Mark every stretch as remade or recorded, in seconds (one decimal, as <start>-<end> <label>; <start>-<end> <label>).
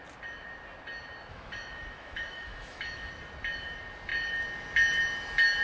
0.0-1.3 recorded; 1.3-3.1 remade; 3.1-5.6 recorded